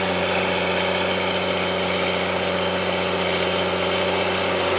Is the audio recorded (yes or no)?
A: yes